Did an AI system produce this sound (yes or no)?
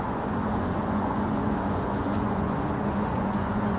yes